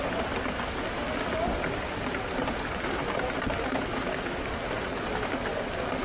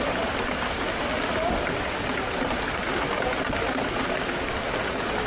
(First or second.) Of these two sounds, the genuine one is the first